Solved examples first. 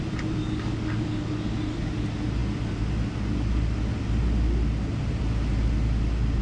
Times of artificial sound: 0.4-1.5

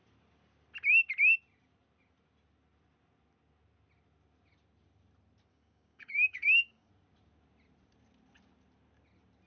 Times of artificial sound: 5.5-6.9

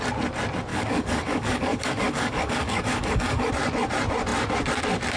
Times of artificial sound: 0.7-3.5

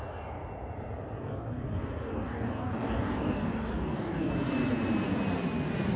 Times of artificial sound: 1.2-4.3

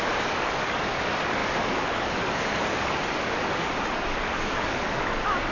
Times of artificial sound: 0.0-5.5

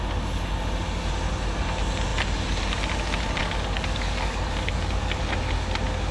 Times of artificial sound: 3.4-5.2